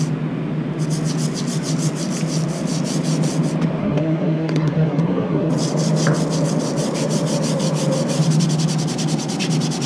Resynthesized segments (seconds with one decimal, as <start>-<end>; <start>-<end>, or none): 3.8-5.5